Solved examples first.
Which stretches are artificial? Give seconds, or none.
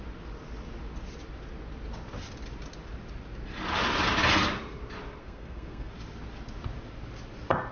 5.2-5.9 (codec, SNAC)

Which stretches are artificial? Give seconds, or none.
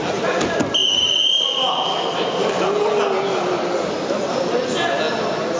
none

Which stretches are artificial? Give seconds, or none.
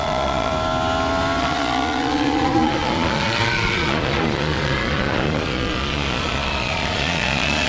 0.0-0.5 (vocoder, Vocos); 1.4-7.7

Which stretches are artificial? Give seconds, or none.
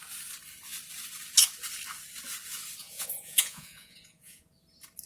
2.8-4.5 (vocoder, Vocos)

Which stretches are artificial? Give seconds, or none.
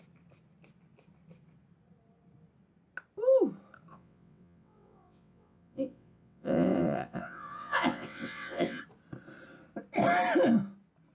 3.9-8.8 (vocoder, WaveNeXt)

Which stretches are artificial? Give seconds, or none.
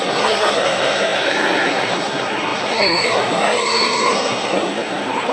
0.0-5.3 (codec, SNAC)